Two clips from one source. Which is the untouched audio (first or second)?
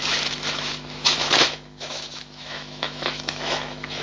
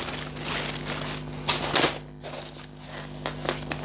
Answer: second